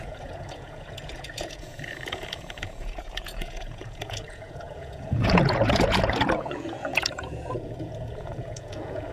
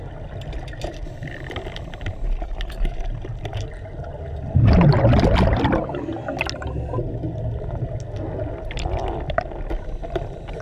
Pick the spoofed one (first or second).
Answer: first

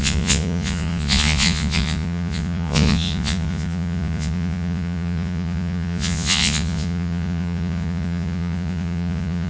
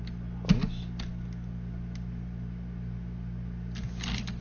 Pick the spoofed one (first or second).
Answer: first